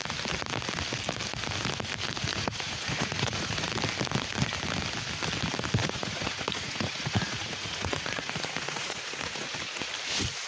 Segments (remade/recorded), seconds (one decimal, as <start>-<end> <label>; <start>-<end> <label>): 0.0-2.3 recorded; 2.3-3.7 remade; 3.7-5.8 recorded; 5.8-9.9 remade; 9.9-10.5 recorded